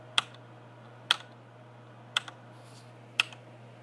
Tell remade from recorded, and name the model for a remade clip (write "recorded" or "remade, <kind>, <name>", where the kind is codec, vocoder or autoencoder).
recorded